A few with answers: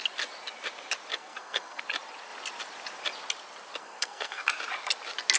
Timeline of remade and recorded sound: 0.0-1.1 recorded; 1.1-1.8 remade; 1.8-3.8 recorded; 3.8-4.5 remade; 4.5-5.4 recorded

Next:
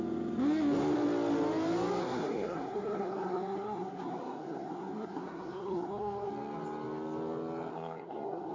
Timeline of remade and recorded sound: 0.0-2.0 recorded; 2.0-6.3 remade; 6.3-7.7 recorded; 7.7-8.5 remade

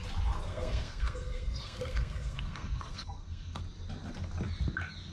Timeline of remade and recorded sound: 0.0-0.5 recorded; 0.5-3.6 remade; 3.6-5.1 recorded